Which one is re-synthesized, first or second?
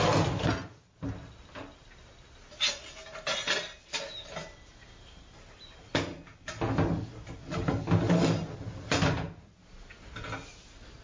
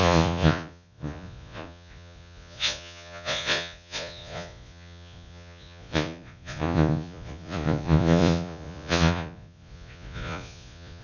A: second